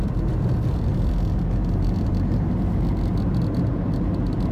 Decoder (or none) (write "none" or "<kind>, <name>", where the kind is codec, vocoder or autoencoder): none